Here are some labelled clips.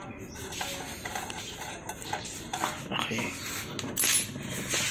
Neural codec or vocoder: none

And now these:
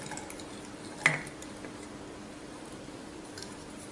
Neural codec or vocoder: none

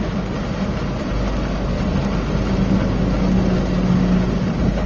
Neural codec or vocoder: none